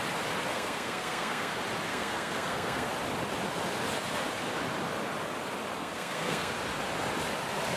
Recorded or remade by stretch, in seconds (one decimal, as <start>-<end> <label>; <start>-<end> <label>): 0.0-0.5 recorded; 0.5-1.5 remade; 1.5-1.9 recorded; 1.9-2.9 remade; 2.9-5.8 recorded; 5.8-6.5 remade; 6.5-7.8 recorded